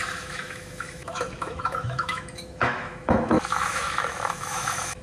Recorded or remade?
remade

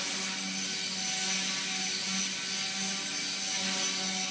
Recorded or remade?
recorded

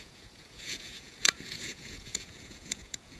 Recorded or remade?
remade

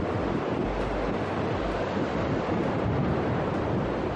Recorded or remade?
recorded